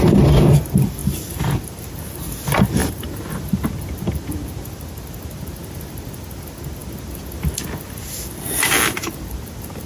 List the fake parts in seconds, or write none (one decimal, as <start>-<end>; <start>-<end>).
2.8-3.3